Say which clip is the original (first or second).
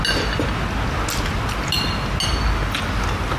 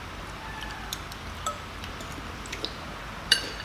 first